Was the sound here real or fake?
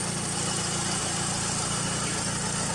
real